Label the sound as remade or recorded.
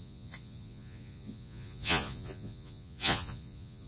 remade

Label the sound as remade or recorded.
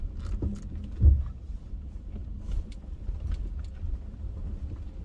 recorded